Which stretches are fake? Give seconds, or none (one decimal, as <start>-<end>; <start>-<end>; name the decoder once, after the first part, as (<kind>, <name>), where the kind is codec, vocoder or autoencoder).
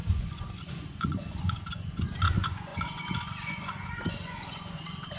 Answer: 0.0-5.2 (vocoder, Vocos)